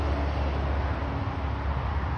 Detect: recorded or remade recorded